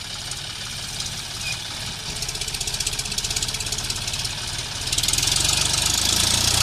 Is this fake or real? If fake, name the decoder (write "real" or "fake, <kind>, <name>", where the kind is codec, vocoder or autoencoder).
real